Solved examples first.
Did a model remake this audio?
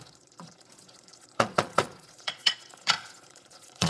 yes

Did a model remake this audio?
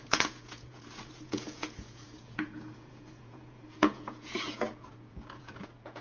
yes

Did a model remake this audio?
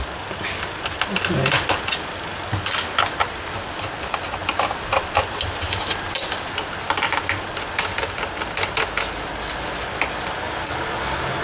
no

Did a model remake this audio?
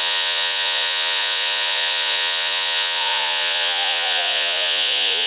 yes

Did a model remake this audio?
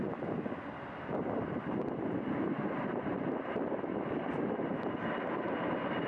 no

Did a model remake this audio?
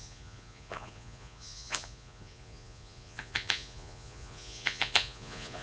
yes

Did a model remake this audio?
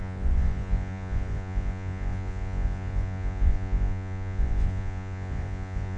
yes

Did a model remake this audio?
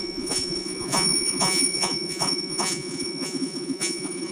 yes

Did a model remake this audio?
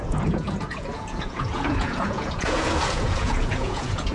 yes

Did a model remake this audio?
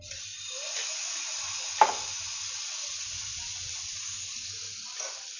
no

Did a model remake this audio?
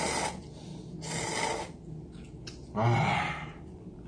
no